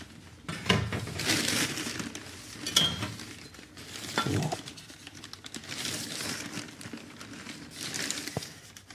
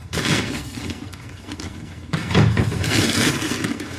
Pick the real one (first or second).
first